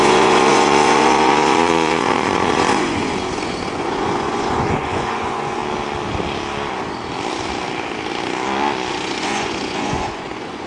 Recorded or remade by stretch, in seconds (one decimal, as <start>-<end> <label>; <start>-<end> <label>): 0.0-5.6 remade; 5.6-8.9 recorded; 8.9-10.7 remade